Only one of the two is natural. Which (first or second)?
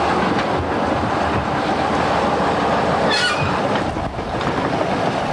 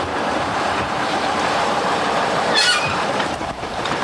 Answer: first